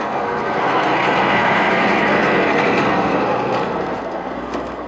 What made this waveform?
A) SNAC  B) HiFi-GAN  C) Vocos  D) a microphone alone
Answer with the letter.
A